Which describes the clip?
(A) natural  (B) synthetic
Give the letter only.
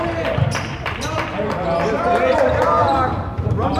A